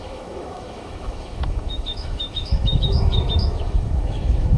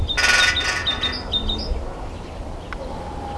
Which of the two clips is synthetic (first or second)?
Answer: first